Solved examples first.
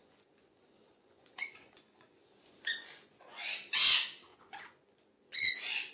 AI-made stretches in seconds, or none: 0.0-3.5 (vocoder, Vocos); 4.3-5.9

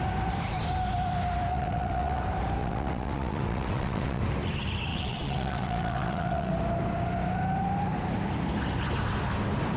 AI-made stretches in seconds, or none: 1.5-2.2 (vocoder, WaveNeXt); 2.6-4.2; 4.9-6.5